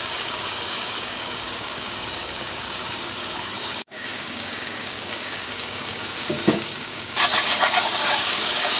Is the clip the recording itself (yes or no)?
no